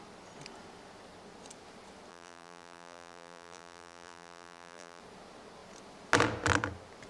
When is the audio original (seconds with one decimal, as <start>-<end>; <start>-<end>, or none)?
0.0-2.1; 5.0-7.1

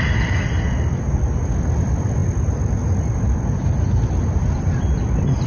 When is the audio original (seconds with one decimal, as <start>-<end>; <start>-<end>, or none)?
0.0-5.5

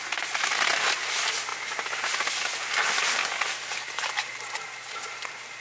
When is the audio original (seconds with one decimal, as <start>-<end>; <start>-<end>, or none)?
0.0-5.6

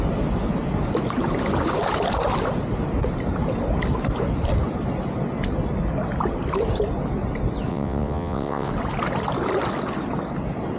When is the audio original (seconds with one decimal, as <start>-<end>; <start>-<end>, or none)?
0.0-7.7; 8.7-10.8

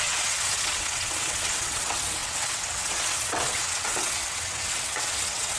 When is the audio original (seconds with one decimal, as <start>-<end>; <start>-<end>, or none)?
none